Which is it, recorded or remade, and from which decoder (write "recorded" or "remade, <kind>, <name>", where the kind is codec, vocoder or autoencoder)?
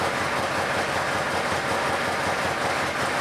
recorded